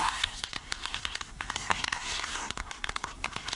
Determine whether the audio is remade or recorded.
remade